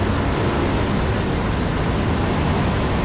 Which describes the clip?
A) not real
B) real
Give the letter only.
B